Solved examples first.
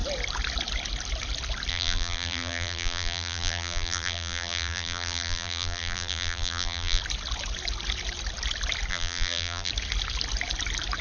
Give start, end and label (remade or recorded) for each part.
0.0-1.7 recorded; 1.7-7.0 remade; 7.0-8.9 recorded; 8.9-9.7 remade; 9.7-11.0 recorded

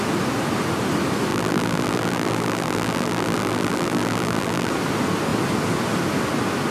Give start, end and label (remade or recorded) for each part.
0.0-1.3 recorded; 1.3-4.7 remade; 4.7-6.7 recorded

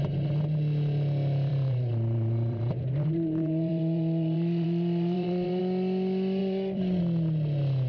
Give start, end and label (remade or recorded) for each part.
0.0-1.5 recorded; 1.5-5.6 remade; 5.6-6.4 recorded; 6.4-7.0 remade; 7.0-7.9 recorded

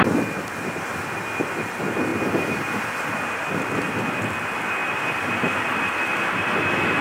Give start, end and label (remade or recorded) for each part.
0.0-7.0 recorded

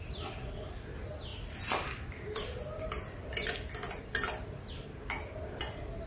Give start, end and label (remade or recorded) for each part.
0.0-6.1 recorded

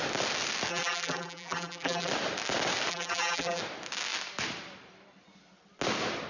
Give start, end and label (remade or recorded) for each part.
0.0-0.7 recorded; 0.7-2.1 remade; 2.1-2.9 recorded; 2.9-3.6 remade; 3.6-6.3 recorded

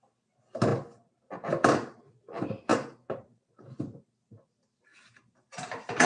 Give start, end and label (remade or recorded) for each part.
0.0-2.7 recorded; 2.7-4.1 remade; 4.1-4.9 recorded; 4.9-6.1 remade